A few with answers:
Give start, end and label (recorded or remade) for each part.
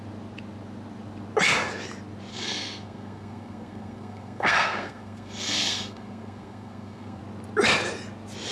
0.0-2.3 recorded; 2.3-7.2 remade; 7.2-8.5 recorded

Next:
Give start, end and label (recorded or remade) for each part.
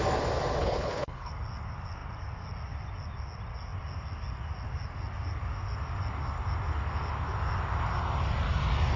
0.0-0.6 recorded; 0.6-1.3 remade; 1.3-9.0 recorded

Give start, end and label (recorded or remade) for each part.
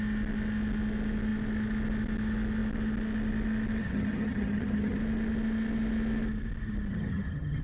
0.0-3.8 recorded; 3.8-5.0 remade; 5.0-6.9 recorded; 6.9-7.6 remade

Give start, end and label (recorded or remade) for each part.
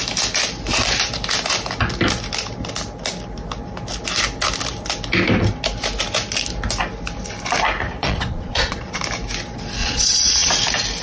0.0-8.0 recorded; 8.0-9.0 remade; 9.0-9.8 recorded; 9.8-10.5 remade; 10.5-11.0 recorded